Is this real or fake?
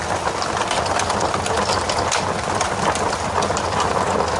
real